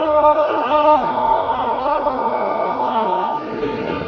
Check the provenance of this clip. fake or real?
fake